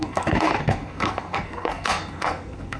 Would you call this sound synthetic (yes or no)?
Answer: yes